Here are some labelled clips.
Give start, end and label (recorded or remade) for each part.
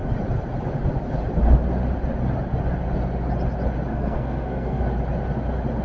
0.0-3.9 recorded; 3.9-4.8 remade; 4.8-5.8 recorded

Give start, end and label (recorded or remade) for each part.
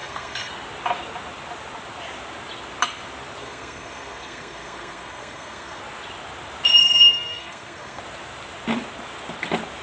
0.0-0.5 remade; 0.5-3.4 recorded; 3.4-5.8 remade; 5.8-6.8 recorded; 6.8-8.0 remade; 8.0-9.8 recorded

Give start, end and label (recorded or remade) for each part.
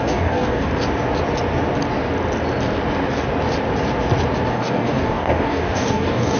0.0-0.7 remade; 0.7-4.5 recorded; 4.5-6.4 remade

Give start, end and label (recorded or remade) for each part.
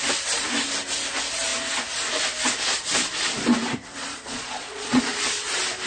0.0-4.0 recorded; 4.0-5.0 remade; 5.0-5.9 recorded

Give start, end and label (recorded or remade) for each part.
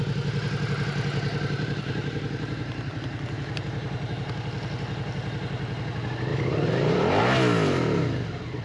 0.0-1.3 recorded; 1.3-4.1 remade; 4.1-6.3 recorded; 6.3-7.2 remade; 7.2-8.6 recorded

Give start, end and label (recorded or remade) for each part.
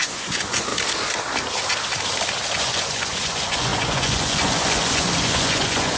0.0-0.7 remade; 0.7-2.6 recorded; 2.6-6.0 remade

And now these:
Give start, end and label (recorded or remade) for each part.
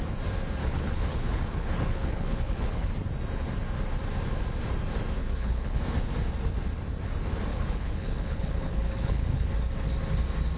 0.0-0.6 recorded; 0.6-2.9 remade; 2.9-5.2 recorded; 5.2-5.8 remade; 5.8-7.5 recorded; 7.5-9.5 remade; 9.5-10.6 recorded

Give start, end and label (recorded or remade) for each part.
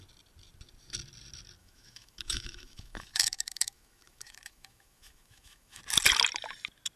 0.0-1.6 recorded; 1.6-5.8 remade; 5.8-7.0 recorded